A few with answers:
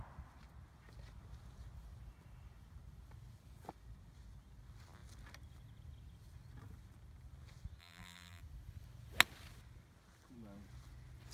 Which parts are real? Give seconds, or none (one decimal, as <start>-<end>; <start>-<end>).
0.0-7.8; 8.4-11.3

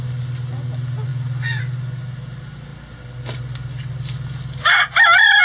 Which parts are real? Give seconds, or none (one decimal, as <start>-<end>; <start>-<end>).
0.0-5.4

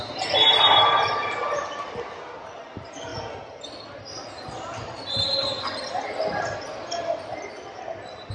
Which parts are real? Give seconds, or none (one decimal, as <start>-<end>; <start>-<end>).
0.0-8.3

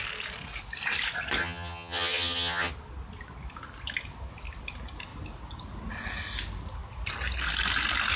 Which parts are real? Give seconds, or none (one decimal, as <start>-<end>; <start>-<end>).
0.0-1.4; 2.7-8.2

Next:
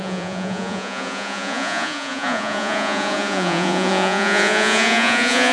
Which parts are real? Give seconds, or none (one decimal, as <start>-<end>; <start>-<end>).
none